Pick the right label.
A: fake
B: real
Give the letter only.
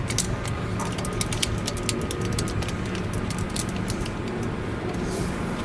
B